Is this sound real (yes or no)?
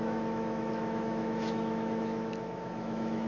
no